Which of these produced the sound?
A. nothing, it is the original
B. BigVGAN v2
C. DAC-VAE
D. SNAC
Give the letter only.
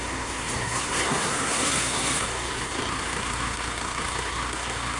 D